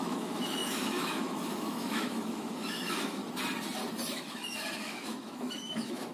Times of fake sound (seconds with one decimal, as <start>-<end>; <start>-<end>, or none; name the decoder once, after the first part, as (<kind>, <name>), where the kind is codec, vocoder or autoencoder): 0.0-3.2 (autoencoder, DAC-VAE); 4.1-6.1